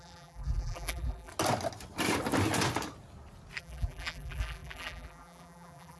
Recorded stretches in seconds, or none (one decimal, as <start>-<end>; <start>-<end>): 1.3-3.6